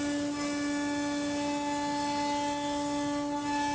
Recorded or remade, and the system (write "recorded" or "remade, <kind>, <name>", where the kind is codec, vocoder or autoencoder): recorded